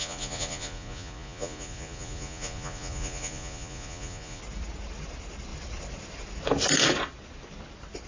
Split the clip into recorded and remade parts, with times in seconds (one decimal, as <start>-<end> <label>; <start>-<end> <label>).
0.0-4.4 remade; 4.4-8.1 recorded